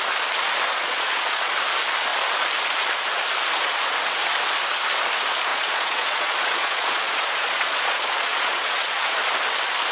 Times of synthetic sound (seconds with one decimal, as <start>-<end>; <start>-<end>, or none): 0.7-1.5; 5.5-9.2